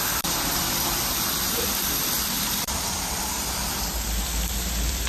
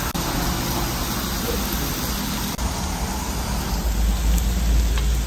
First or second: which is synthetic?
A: first